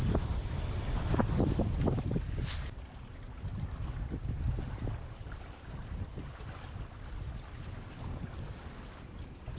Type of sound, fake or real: real